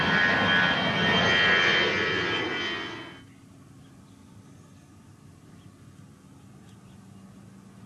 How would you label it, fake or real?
real